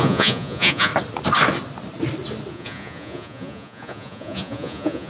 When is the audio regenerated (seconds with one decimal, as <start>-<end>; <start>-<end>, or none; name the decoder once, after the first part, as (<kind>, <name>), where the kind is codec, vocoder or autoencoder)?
0.0-0.9 (vocoder, Vocos); 2.5-5.1